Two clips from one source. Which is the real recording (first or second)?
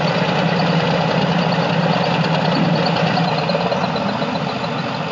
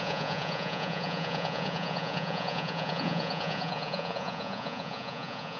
first